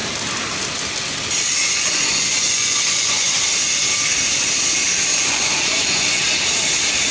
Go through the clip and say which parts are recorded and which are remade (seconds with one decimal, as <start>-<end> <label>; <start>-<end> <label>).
0.0-1.6 recorded; 1.6-3.3 remade; 3.3-5.1 recorded; 5.1-6.2 remade; 6.2-7.1 recorded